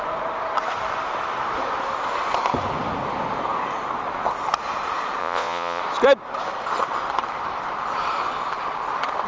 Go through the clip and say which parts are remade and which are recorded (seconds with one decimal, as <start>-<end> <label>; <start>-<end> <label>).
0.0-5.2 recorded; 5.2-5.8 remade; 5.8-9.3 recorded